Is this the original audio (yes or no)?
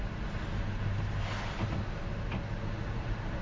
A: yes